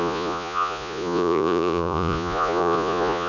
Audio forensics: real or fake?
fake